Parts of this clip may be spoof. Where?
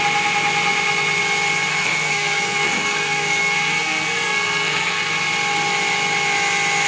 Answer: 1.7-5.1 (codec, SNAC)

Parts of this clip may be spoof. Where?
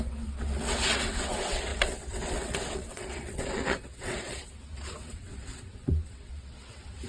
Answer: 0.0-7.1 (vocoder, WaveNeXt)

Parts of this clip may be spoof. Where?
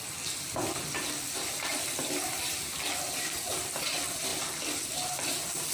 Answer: 1.7-3.5 (vocoder, BigVGAN v2)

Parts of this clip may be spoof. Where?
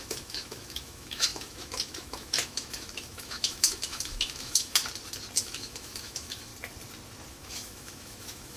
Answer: 0.0-4.8 (autoencoder, DAC-VAE); 5.4-6.5; 7.3-8.6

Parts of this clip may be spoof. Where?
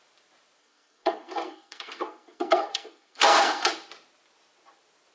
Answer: 0.6-3.7 (codec, SNAC)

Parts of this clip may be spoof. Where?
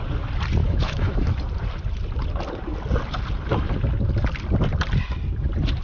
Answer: 0.6-1.4 (autoencoder, DAC-VAE)